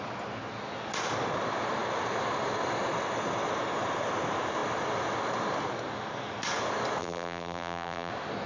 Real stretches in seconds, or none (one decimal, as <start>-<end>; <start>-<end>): 0.0-7.0; 8.1-8.5